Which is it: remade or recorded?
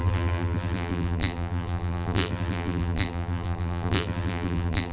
remade